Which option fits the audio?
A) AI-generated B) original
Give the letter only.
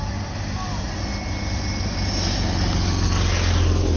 B